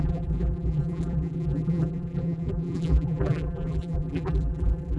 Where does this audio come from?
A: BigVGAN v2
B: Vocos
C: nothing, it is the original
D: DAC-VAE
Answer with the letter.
A